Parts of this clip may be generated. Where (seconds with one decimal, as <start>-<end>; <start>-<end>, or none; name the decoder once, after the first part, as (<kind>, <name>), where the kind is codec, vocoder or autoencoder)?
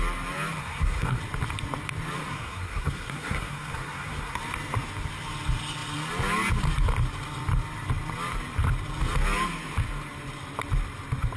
0.6-1.2 (codec, SNAC); 2.2-4.4